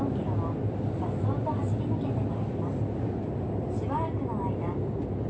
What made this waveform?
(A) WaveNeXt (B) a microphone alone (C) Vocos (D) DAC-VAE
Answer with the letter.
B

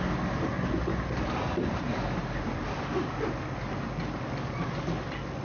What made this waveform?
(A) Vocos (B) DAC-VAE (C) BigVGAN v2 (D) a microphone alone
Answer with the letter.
D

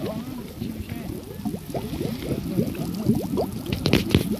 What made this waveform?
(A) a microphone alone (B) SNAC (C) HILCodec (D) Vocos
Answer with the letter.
A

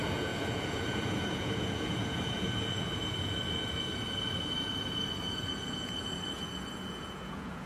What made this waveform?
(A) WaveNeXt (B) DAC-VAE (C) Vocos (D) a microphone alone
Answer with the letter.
C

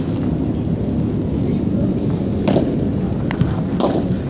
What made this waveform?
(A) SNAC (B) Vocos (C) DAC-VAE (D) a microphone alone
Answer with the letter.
D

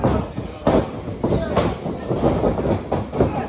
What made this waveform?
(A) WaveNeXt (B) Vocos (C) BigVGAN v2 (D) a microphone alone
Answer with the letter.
D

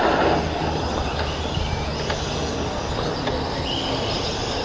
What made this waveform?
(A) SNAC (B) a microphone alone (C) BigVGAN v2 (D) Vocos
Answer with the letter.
B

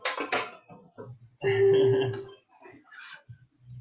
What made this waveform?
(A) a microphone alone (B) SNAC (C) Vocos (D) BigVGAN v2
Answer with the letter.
A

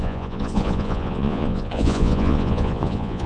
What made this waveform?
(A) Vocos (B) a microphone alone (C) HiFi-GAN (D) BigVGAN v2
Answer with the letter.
A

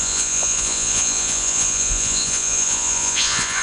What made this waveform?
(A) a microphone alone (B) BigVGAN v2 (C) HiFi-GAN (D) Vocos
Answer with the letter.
D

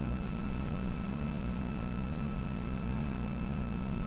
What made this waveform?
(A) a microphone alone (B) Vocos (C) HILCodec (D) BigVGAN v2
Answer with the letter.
B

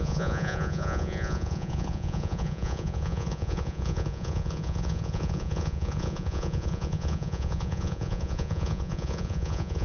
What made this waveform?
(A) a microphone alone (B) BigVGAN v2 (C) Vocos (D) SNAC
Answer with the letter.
C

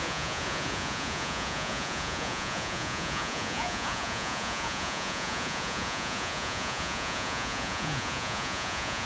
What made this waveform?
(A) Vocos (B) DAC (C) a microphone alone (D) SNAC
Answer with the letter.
A